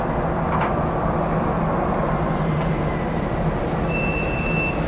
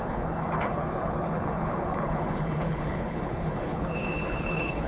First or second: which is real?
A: first